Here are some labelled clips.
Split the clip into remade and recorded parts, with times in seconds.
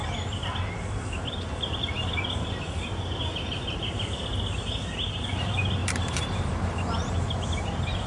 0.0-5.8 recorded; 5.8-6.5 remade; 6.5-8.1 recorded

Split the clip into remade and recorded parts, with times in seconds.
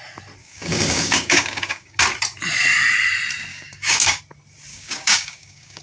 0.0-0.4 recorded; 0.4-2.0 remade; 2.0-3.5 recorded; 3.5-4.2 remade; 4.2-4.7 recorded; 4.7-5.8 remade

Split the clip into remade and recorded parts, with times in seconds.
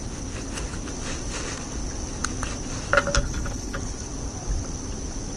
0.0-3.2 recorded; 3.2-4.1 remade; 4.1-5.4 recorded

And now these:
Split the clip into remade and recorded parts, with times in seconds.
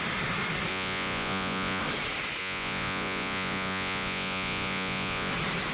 0.0-0.7 recorded; 0.7-1.8 remade; 1.8-2.4 recorded; 2.4-5.3 remade; 5.3-5.7 recorded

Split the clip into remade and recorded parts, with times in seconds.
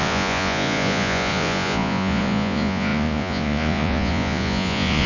0.0-5.1 remade